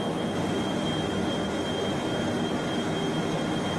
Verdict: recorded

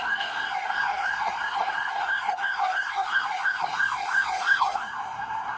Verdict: remade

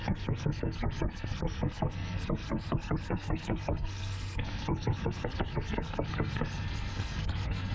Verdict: remade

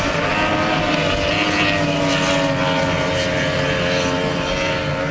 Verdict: recorded